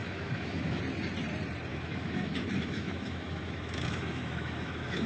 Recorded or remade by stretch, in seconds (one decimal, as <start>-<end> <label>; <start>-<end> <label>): 0.0-0.8 remade; 0.8-1.7 recorded; 1.7-5.1 remade